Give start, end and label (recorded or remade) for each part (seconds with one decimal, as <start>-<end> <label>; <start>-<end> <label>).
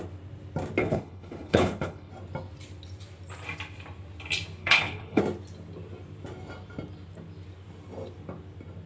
0.0-0.8 recorded; 0.8-2.1 remade; 2.1-4.6 recorded; 4.6-5.2 remade; 5.2-8.9 recorded